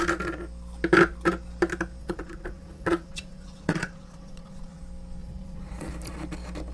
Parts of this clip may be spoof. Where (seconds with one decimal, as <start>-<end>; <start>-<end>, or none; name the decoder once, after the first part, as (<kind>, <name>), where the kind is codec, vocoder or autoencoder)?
2.0-4.8 (vocoder, Vocos); 5.2-5.9